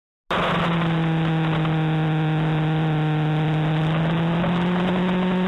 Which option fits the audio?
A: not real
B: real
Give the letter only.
B